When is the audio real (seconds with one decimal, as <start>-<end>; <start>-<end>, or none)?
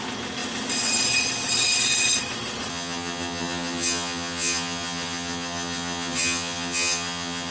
0.0-2.7